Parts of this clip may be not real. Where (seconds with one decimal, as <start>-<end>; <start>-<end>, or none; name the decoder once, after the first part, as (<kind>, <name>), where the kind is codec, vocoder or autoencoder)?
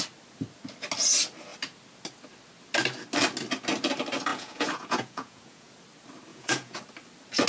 4.3-5.7 (vocoder, Vocos); 6.3-6.8